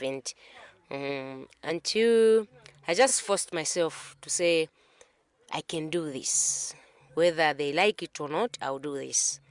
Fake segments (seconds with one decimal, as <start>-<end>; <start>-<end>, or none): 1.1-1.7; 3.1-4.3